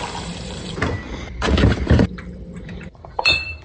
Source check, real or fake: fake